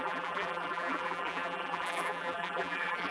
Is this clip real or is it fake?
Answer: fake